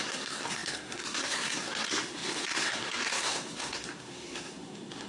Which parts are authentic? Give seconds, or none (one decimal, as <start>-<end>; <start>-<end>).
none